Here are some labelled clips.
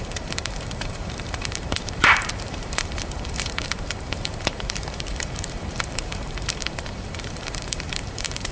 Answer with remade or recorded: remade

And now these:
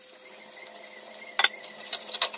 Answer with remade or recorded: recorded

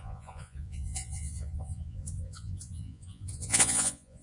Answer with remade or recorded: remade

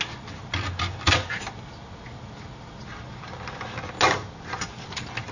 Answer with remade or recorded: recorded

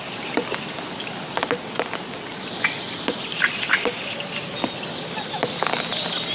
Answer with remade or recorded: recorded